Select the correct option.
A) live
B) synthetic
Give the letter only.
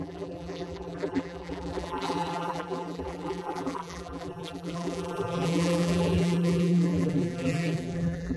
B